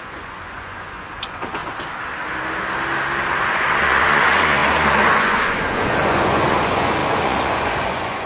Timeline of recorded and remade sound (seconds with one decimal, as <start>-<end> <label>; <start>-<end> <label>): 0.0-1.6 remade; 1.6-3.4 recorded; 3.4-8.3 remade